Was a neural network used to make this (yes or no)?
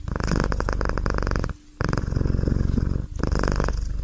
no